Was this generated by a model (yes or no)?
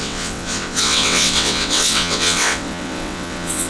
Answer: yes